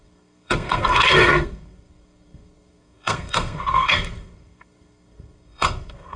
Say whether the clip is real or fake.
fake